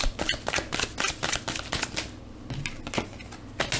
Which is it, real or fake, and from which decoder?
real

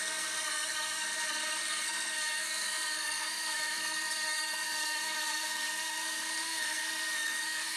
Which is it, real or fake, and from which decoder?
fake, codec, SNAC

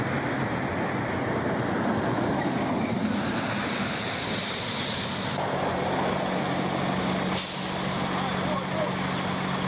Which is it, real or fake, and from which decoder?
real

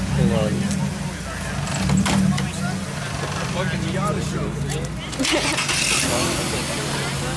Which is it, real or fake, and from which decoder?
real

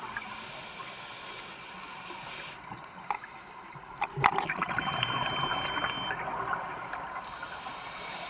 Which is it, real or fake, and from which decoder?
real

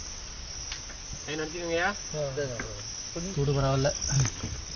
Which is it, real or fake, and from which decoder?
real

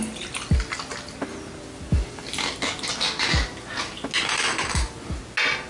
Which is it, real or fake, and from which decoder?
real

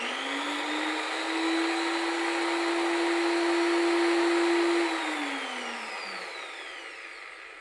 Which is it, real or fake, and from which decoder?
real